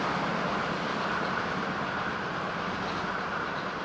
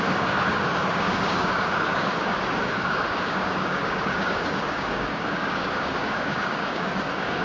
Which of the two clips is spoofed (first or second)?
second